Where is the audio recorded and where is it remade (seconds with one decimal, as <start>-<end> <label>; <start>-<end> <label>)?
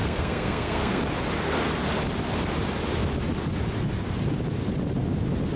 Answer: 0.0-1.0 remade; 1.0-5.6 recorded